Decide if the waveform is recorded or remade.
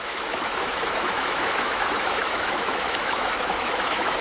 remade